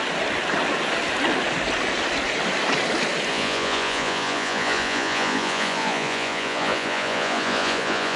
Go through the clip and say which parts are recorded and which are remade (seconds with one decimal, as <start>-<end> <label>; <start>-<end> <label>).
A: 0.0-3.3 recorded; 3.3-8.2 remade